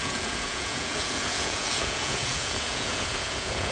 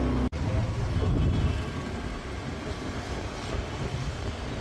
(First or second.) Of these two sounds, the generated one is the first